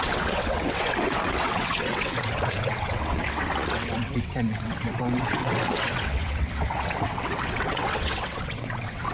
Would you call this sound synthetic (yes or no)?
yes